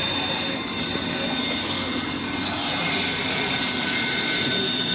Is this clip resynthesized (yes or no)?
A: no